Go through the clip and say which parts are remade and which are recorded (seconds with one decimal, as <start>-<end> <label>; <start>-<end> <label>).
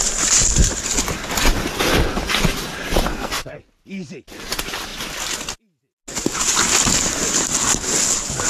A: 0.0-3.1 recorded; 3.1-3.6 remade; 3.6-8.5 recorded